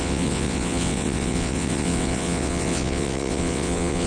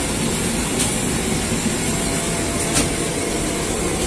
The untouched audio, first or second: second